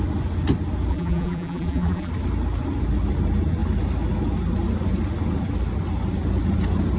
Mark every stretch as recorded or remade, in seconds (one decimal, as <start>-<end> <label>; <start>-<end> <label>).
0.0-0.9 recorded; 0.9-2.1 remade; 2.1-7.0 recorded